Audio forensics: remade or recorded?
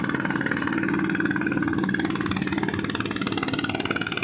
recorded